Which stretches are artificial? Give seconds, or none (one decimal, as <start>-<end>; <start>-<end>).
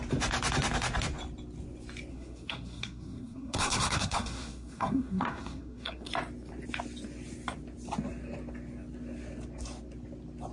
2.1-6.1